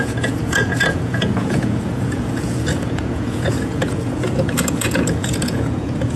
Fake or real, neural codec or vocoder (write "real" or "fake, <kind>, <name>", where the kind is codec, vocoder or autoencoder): fake, vocoder, Vocos